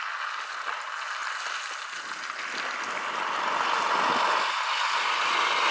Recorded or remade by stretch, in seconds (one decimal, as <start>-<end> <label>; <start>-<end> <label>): 0.0-5.7 recorded